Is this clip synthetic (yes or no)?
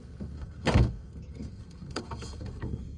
yes